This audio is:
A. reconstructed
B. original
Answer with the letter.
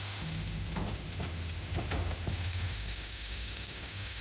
A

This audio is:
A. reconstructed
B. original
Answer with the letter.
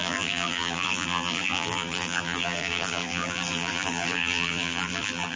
A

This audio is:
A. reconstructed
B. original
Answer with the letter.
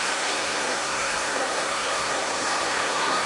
A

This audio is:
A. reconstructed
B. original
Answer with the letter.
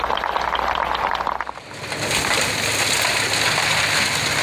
B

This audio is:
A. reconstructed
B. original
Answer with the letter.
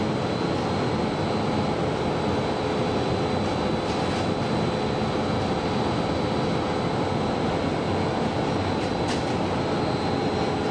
B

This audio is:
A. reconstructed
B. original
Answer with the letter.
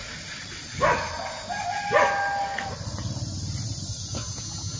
B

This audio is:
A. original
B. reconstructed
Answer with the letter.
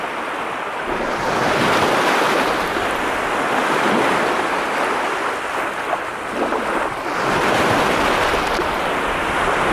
A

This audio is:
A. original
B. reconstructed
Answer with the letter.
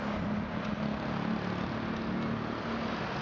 A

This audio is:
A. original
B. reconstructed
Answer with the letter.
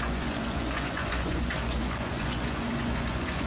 B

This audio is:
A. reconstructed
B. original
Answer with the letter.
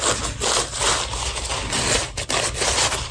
B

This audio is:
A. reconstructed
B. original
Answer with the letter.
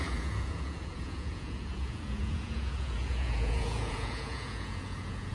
A